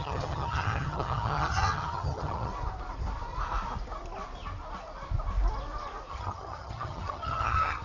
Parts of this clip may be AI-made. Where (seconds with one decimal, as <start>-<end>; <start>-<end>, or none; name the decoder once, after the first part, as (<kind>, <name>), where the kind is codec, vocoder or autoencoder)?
0.0-2.5 (vocoder, HiFi-GAN); 6.1-7.8